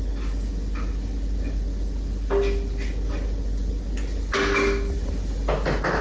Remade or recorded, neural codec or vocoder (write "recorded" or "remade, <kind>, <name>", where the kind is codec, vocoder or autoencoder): recorded